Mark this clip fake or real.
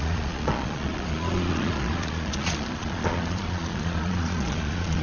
fake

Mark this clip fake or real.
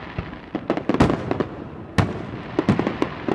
real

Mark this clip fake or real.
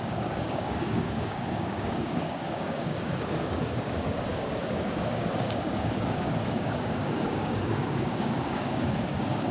fake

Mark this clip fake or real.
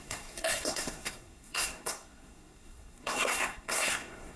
fake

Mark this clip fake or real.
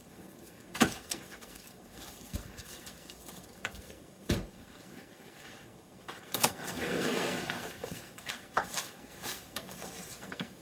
fake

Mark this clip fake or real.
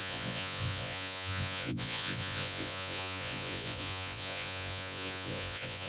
fake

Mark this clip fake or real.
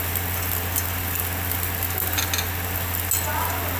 real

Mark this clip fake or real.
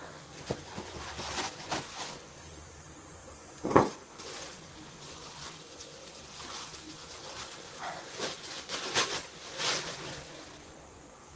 fake